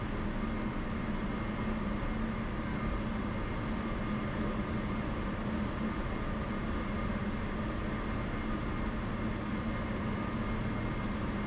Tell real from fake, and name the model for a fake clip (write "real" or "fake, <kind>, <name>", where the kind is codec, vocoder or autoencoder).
real